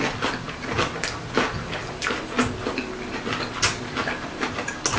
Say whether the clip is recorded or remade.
recorded